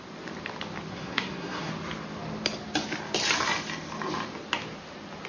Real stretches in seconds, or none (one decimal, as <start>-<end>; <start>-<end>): 0.0-0.9; 1.7-5.3